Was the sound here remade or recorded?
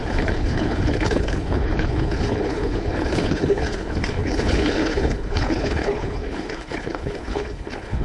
remade